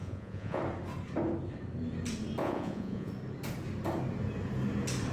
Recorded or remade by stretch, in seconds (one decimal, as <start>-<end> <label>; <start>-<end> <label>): 0.0-0.6 remade; 0.6-2.4 recorded; 2.4-3.1 remade; 3.1-5.1 recorded